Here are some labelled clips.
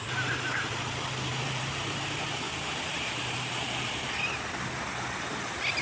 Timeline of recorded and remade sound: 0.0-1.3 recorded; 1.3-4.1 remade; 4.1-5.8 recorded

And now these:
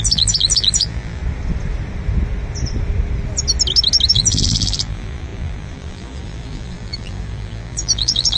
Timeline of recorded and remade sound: 0.0-1.2 remade; 1.2-4.1 recorded; 4.1-8.4 remade

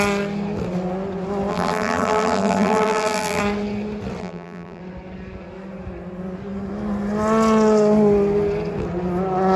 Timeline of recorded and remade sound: 0.0-1.5 recorded; 1.5-3.4 remade; 3.4-4.2 recorded; 4.2-4.8 remade; 4.8-9.6 recorded

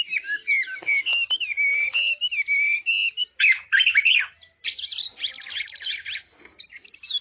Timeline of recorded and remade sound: 0.0-7.2 recorded